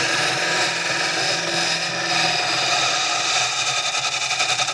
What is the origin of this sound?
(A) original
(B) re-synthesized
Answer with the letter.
A